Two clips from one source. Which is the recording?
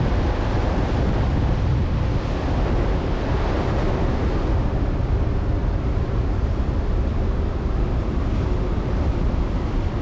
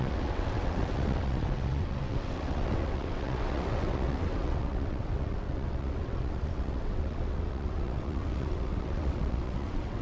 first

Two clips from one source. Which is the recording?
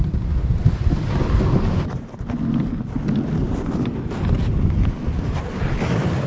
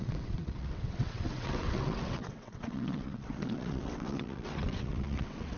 first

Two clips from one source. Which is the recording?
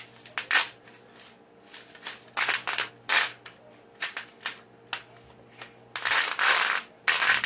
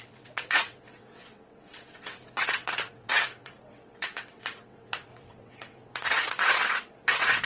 first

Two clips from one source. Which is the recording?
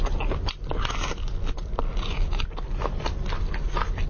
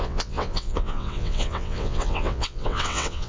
first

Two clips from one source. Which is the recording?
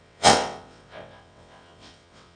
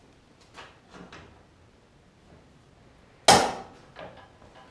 second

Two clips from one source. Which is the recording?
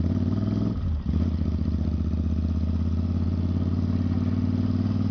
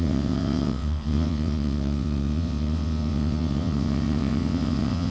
first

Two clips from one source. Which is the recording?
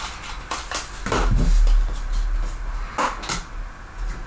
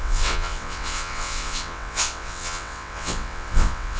first